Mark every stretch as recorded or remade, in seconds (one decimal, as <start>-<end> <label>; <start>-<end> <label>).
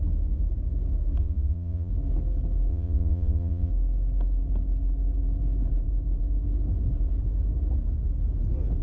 0.0-1.2 recorded; 1.2-1.9 remade; 1.9-2.7 recorded; 2.7-3.7 remade; 3.7-8.8 recorded